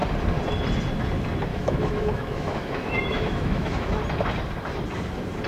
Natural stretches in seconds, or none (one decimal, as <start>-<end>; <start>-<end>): 0.0-1.5; 4.0-5.5